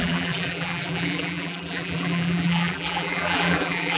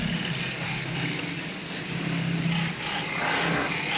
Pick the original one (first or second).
second